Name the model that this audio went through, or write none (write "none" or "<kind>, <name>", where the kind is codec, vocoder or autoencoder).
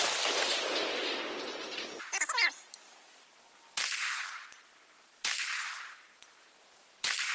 none